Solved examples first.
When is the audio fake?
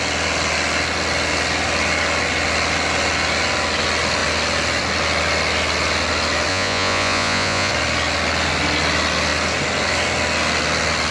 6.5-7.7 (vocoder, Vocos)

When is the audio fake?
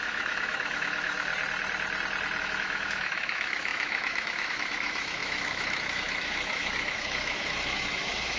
0.0-1.3 (autoencoder, DAC-VAE); 2.4-8.4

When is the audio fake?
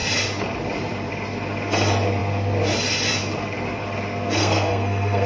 4.4-5.3 (codec, SNAC)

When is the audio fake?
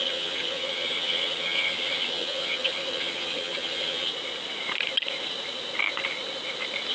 0.0-4.1 (vocoder, HiFi-GAN)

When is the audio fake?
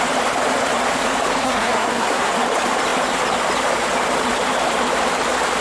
1.4-2.3 (codec, SNAC)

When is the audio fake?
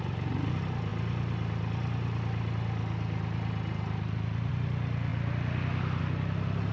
none